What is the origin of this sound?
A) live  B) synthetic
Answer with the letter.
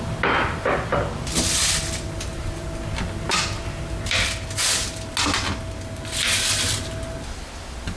A